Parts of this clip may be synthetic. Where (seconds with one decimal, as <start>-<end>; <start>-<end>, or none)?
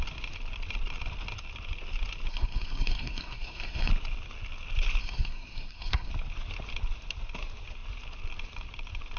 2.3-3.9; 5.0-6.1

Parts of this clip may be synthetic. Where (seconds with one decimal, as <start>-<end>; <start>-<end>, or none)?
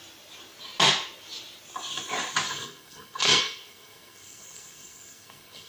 2.5-5.7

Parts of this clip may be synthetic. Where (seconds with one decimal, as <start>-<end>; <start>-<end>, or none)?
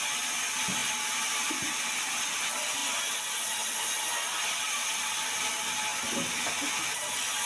none